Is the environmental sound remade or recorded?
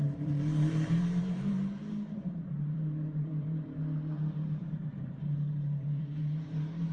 remade